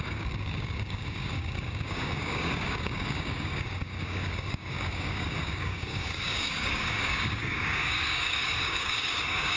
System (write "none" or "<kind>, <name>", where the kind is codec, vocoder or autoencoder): codec, DAC